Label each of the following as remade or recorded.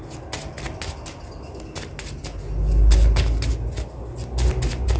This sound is recorded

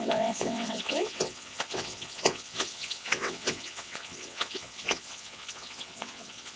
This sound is remade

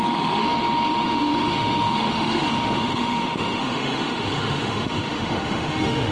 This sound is remade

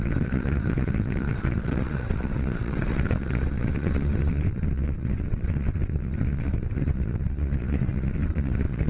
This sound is remade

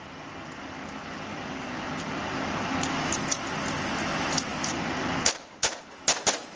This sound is recorded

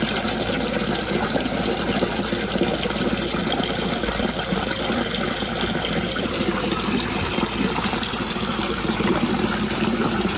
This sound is recorded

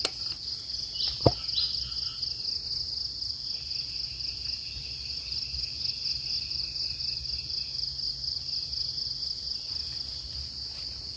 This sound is recorded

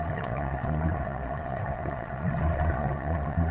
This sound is remade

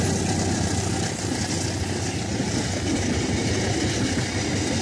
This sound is recorded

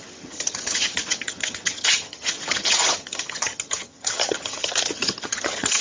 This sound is remade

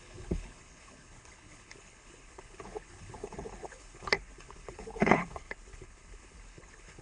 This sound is remade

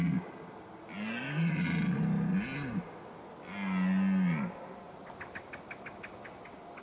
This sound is recorded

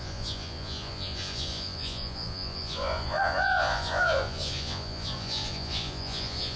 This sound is remade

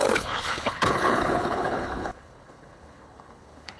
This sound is remade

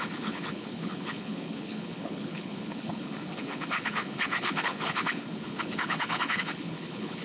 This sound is remade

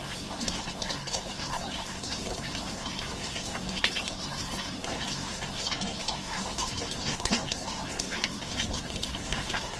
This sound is remade